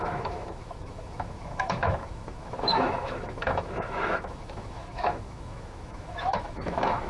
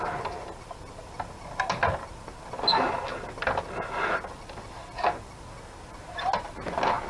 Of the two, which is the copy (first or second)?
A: first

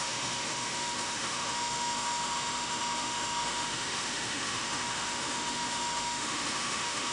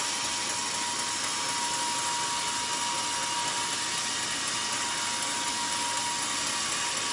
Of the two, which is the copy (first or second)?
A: first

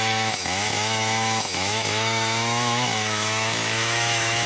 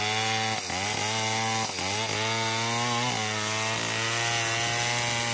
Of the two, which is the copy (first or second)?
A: first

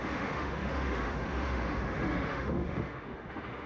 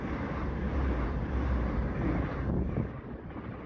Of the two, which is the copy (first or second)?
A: first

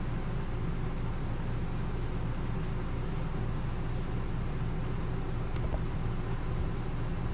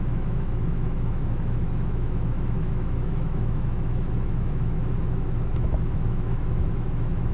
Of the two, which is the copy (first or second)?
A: second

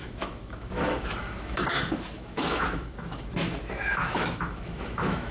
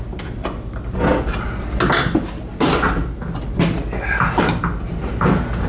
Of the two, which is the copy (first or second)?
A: first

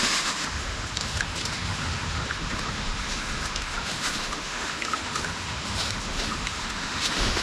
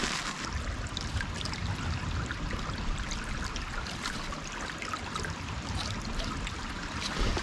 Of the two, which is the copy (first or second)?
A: first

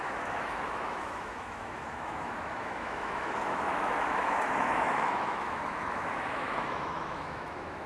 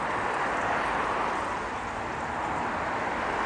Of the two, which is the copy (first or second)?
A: first